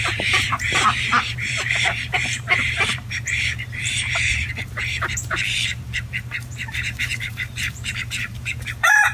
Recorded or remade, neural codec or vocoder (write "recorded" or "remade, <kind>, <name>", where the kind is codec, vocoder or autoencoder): remade, vocoder, BigVGAN v2